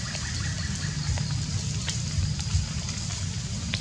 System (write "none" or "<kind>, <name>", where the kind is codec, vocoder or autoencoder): none